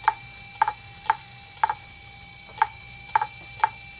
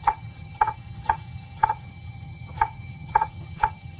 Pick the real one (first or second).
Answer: first